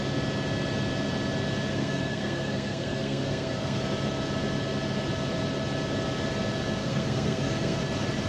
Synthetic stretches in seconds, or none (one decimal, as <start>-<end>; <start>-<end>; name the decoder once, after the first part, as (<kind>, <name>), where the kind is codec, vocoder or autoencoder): 1.7-3.8 (codec, SNAC); 6.8-7.8